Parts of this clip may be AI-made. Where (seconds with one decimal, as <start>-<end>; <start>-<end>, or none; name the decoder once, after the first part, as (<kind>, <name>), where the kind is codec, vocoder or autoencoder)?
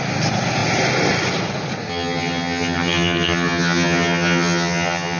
1.9-5.2 (vocoder, HiFi-GAN)